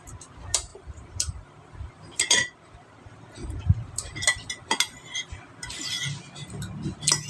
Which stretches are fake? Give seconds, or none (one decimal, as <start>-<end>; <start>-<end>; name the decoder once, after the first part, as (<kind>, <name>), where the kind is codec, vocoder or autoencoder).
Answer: 0.0-4.2 (vocoder, BigVGAN v2)